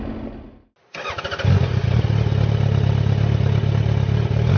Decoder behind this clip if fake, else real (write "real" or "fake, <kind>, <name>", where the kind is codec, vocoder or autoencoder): real